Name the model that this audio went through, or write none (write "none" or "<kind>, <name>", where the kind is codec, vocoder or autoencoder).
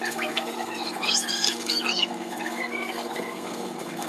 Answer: codec, SNAC